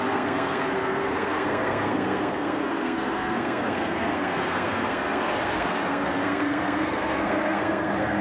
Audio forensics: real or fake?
fake